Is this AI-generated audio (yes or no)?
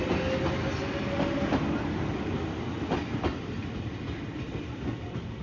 no